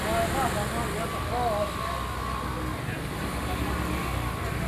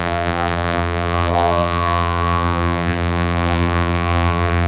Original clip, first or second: first